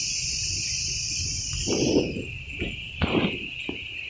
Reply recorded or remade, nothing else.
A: recorded